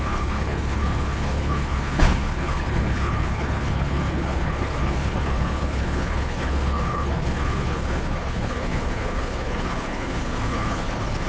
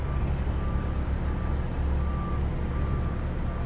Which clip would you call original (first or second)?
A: second